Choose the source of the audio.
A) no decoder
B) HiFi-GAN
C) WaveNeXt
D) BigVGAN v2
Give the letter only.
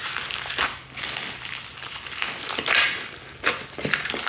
A